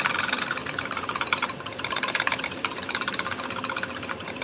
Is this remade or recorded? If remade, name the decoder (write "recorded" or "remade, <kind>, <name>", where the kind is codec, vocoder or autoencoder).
remade, vocoder, BigVGAN v2